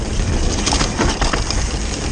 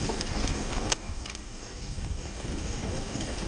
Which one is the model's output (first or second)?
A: second